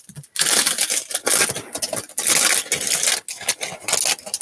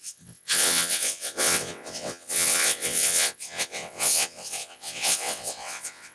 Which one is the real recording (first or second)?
first